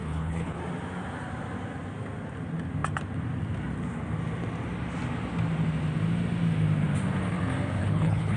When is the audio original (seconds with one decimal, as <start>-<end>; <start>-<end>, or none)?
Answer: 0.6-7.8